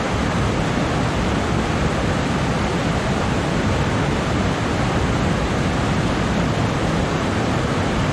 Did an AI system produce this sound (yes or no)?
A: no